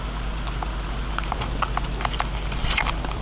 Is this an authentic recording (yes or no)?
yes